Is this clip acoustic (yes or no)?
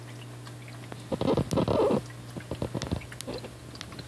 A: yes